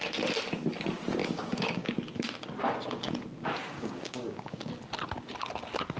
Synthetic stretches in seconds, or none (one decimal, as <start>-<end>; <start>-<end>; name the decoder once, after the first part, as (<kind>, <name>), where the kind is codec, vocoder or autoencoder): 1.2-1.9 (codec, DAC); 3.6-4.7